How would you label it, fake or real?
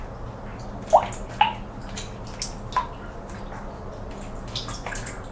real